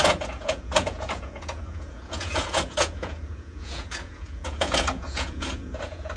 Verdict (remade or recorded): remade